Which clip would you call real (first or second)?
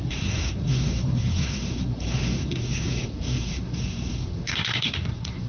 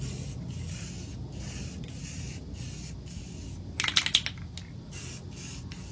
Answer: second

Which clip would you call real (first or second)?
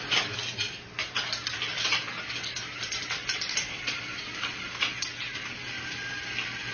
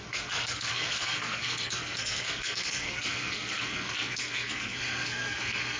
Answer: first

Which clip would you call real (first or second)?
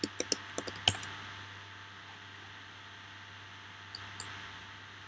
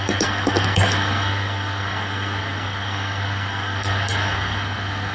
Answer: first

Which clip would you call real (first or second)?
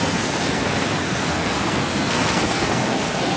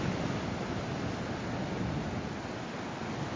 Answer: second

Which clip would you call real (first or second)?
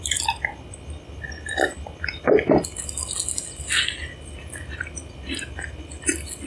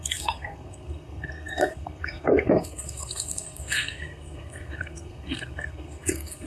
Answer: first